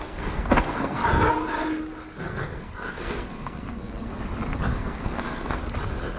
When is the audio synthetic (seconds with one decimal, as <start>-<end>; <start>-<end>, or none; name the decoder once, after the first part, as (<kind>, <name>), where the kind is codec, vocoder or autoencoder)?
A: 0.0-1.0 (codec, SNAC); 2.2-4.1; 4.7-5.6